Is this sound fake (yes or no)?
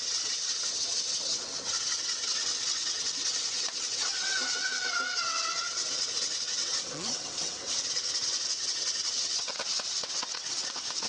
yes